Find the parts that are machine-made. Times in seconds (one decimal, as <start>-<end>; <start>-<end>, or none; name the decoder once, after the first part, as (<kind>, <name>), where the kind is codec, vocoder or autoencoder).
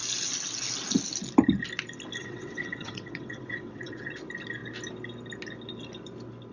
2.2-4.1 (vocoder, WaveNeXt)